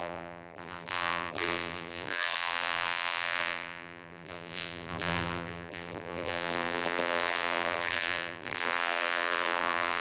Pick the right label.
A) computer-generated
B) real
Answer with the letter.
A